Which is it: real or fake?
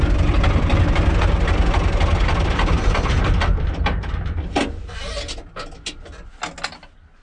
real